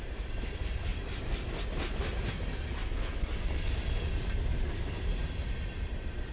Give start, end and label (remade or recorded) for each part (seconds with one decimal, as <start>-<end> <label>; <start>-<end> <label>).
0.0-0.9 remade; 0.9-2.1 recorded; 2.1-2.8 remade; 2.8-4.1 recorded; 4.1-6.3 remade